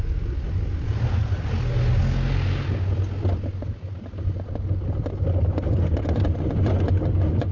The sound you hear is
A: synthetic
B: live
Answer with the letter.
B